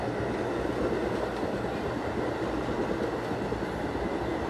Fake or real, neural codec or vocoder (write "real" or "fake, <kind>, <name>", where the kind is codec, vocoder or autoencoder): real